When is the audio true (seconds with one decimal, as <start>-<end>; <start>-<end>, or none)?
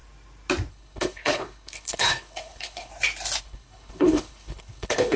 0.0-0.7; 2.9-3.4